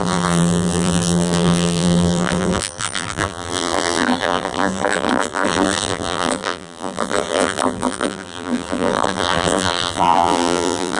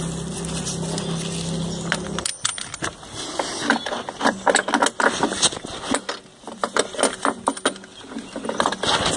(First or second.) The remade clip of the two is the first